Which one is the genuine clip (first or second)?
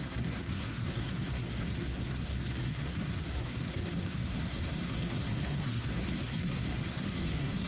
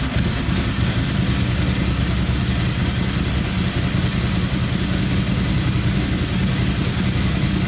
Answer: second